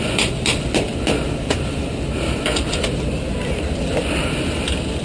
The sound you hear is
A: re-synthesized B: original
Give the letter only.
B